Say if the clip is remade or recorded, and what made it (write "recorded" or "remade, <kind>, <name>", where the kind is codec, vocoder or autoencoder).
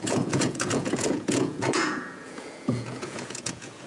remade, vocoder, Vocos